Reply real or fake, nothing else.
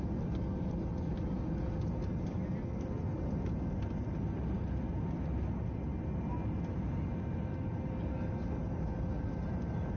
real